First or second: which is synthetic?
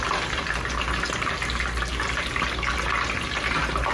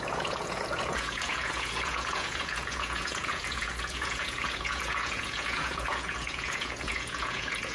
second